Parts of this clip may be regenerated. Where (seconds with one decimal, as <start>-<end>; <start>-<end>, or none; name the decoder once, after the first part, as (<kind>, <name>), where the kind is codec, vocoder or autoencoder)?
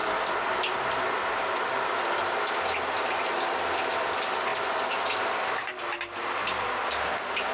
none